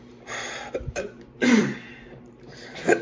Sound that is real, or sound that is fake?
fake